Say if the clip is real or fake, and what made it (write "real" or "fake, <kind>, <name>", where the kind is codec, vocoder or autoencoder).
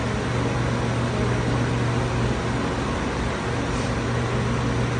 fake, vocoder, BigVGAN v2